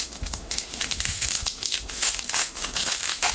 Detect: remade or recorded remade